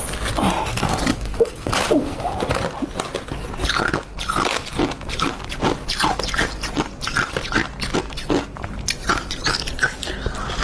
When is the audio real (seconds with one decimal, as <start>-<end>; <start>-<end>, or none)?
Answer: 0.0-0.7; 2.2-10.6